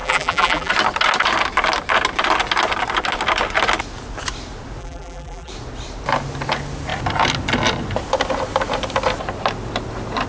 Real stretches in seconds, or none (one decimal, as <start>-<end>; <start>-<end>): 0.7-4.8; 5.5-10.3